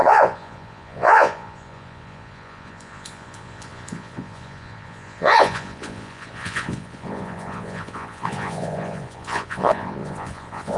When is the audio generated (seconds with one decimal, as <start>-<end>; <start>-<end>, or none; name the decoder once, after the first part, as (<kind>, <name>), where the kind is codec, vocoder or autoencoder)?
0.0-10.8 (vocoder, Vocos)